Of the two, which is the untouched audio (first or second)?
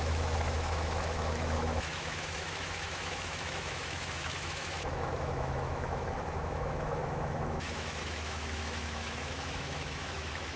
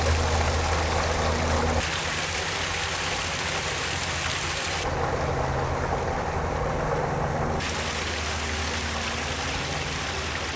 second